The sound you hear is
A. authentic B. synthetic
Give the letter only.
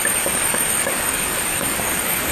B